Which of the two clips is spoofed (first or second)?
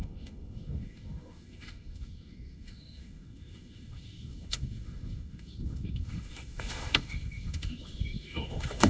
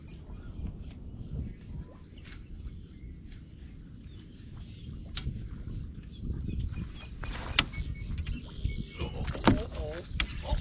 first